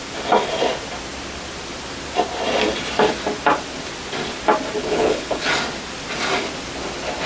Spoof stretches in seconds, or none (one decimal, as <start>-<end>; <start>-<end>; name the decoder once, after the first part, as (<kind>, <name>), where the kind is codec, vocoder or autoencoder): 4.8-5.5 (codec, HILCodec)